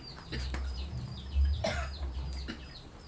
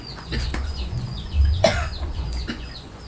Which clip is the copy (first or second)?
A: second